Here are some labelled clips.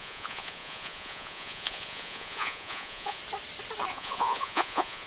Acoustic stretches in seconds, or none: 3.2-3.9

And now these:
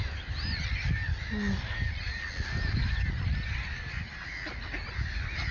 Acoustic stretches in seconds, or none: 0.0-5.5